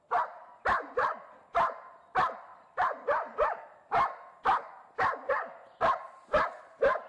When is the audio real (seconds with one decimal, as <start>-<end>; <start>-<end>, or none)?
0.0-7.1